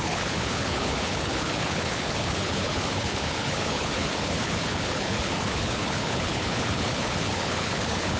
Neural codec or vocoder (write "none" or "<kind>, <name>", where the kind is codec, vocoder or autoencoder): codec, HILCodec